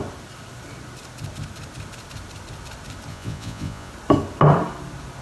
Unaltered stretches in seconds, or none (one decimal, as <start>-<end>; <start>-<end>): 0.0-3.1; 3.9-5.2